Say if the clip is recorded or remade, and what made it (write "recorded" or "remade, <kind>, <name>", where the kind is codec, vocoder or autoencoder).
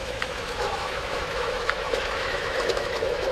remade, autoencoder, DAC-VAE